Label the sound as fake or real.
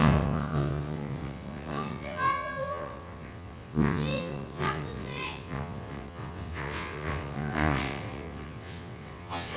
fake